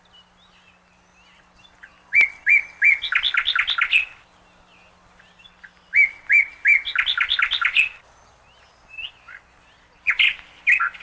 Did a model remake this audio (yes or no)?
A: no